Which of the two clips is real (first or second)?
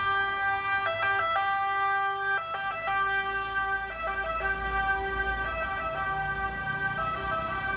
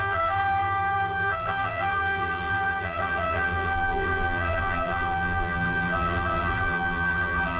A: first